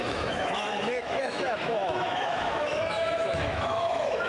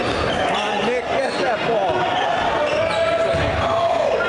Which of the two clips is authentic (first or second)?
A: second